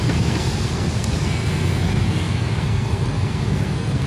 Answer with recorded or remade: remade